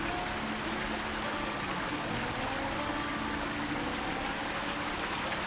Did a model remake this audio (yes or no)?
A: no